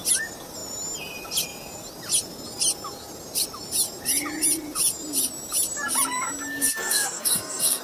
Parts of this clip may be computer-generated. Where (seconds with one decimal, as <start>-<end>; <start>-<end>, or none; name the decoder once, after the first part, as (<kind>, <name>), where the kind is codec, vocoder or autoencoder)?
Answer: 6.6-7.8 (codec, SNAC)